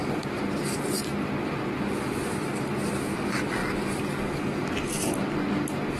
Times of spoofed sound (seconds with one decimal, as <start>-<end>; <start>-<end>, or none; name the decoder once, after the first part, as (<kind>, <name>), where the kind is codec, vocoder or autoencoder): none

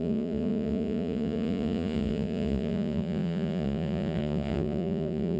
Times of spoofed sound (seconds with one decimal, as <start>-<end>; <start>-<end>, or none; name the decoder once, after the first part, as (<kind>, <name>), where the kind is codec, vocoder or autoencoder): 0.0-5.4 (vocoder, Vocos)

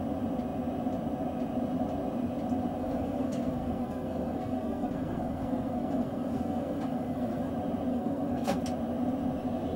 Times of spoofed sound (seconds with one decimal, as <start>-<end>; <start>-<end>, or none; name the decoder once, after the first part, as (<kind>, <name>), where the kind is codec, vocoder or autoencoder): 2.8-7.5 (codec, SNAC); 7.9-8.6

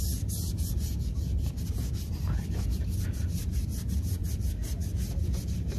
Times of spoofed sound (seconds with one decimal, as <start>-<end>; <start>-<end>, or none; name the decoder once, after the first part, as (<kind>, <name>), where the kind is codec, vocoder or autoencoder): 3.4-4.2 (vocoder, BigVGAN v2); 5.3-5.8

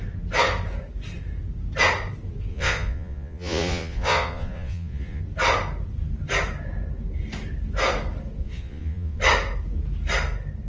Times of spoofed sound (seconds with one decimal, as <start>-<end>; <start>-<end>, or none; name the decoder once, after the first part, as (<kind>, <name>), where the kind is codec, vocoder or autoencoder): 2.5-5.2 (vocoder, Vocos); 8.4-9.2

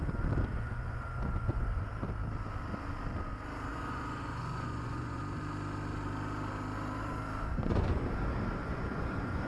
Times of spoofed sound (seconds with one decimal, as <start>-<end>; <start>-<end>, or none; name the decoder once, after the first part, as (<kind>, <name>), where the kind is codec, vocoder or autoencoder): 0.5-1.9 (vocoder, Vocos); 3.7-5.2; 7.5-8.1; 8.6-9.5

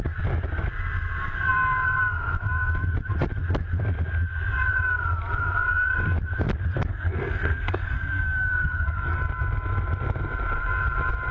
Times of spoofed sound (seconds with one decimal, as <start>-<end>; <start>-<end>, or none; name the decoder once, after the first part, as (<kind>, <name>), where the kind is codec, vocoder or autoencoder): 6.9-9.2 (codec, SNAC)

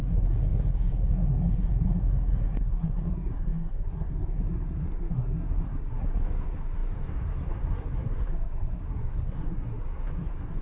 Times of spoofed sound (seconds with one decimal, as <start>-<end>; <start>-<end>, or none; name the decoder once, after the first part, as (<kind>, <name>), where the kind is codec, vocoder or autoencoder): 0.0-10.6 (codec, SNAC)